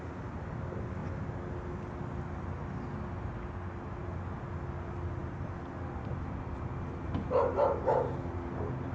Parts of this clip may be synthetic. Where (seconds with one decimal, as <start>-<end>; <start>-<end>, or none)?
none